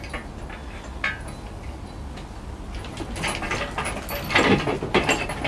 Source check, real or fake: real